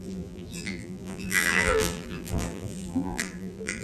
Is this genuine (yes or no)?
no